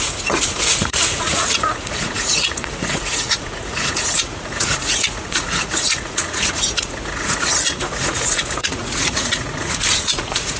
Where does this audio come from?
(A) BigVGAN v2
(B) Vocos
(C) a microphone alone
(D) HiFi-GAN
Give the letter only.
B